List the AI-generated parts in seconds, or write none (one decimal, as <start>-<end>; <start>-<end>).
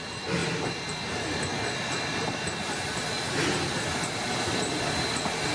none